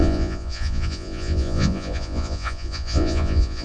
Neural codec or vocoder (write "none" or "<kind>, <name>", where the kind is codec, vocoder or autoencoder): vocoder, Vocos